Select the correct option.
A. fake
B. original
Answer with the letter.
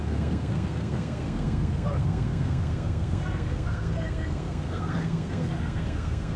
A